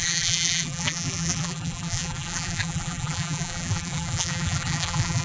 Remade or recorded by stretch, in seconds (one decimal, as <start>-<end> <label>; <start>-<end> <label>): 0.0-5.2 remade